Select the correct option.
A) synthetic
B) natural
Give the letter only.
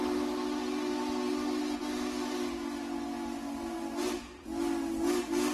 B